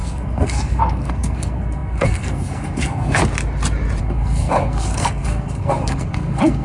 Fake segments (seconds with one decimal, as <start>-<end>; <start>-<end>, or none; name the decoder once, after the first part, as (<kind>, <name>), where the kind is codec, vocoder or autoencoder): 0.0-3.2 (codec, SNAC); 4.0-6.6